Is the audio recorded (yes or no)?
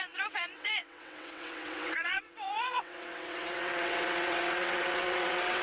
no